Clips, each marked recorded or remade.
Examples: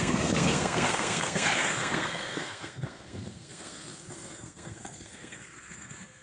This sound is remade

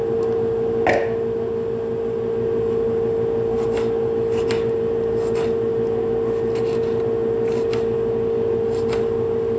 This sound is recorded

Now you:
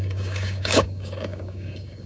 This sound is remade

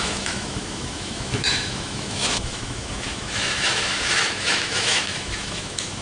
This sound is remade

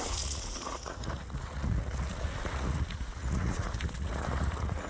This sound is remade